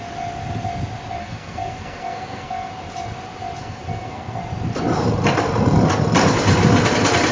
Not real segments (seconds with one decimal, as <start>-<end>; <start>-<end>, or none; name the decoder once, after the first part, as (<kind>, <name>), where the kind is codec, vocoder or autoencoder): 1.2-2.7 (codec, SNAC); 3.6-4.4